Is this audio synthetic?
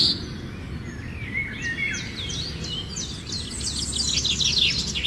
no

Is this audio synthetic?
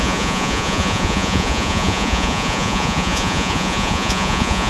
yes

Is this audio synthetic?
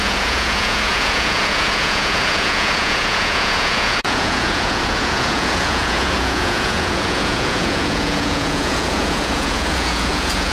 yes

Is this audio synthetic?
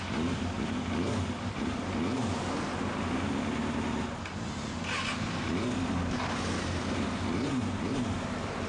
no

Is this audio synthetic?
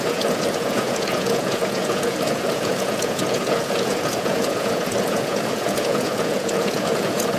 yes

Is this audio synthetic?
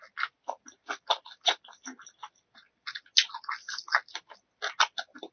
no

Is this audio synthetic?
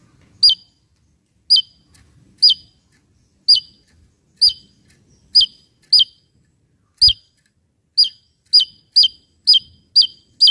no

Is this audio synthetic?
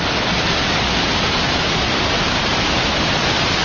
no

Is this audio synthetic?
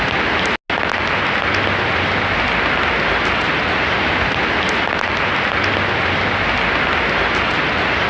no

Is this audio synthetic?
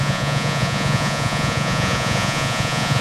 yes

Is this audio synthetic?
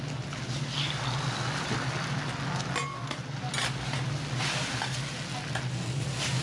no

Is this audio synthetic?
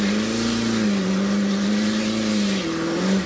no